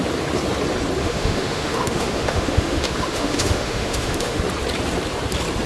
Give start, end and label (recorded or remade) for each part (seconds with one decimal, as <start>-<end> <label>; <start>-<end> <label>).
0.0-1.0 recorded; 1.0-4.4 remade; 4.4-5.7 recorded